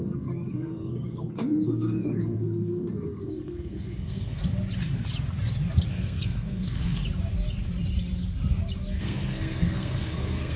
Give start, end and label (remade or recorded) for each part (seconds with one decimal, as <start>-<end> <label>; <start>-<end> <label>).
0.0-4.4 remade; 4.4-5.9 recorded; 5.9-7.0 remade; 7.0-9.0 recorded; 9.0-10.6 remade